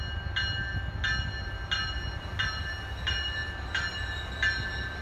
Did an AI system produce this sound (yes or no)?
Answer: no